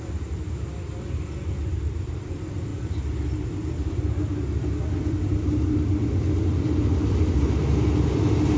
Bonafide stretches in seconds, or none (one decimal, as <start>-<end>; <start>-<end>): 0.0-1.4; 2.3-2.7; 7.4-8.6